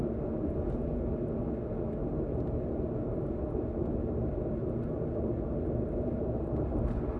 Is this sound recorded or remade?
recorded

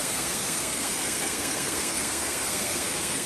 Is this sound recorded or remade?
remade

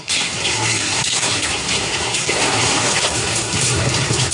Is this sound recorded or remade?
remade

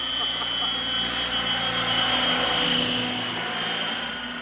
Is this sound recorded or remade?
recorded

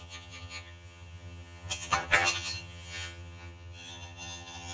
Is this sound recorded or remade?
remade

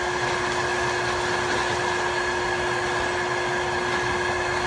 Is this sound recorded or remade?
recorded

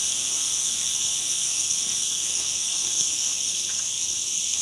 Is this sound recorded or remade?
remade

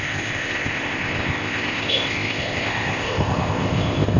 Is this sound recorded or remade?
remade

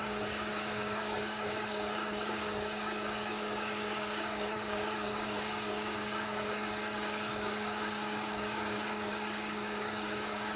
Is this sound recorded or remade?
remade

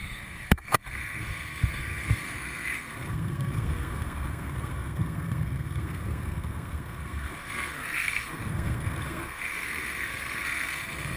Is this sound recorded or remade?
remade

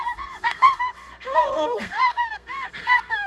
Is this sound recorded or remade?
remade